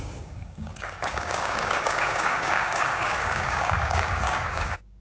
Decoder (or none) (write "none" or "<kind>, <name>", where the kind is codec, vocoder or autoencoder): codec, DAC